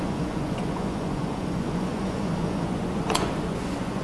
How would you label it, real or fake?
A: fake